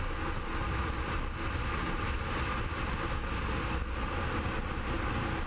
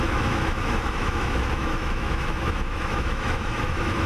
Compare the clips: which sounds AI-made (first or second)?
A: second